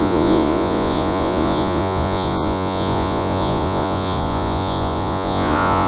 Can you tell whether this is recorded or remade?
remade